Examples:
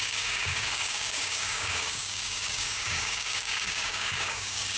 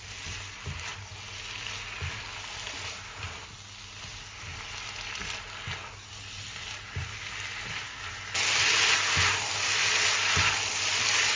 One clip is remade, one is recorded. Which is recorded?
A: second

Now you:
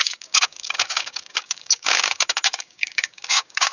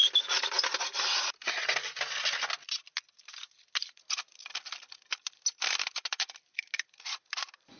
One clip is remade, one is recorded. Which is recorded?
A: second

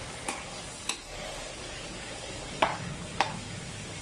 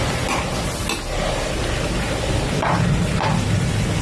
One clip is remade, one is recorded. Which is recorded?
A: second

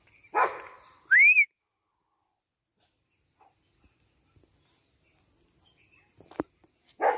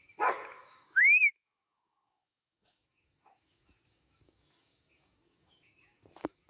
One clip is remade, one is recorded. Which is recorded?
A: first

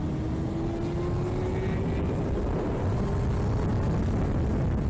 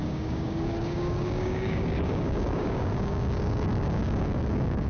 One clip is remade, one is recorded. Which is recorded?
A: first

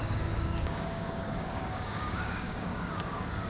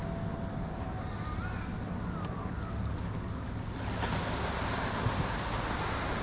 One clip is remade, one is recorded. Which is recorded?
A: second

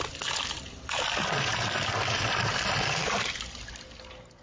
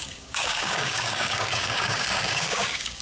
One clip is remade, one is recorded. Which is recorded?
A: first